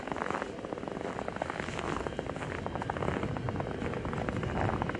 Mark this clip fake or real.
real